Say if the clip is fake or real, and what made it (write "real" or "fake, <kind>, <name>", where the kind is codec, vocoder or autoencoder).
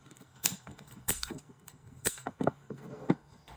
fake, codec, SNAC